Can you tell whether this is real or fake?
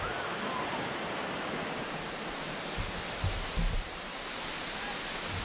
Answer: real